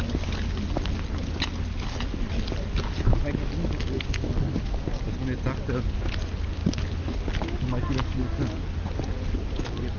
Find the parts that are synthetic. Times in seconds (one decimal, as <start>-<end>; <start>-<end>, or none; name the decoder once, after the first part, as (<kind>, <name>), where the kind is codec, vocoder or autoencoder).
none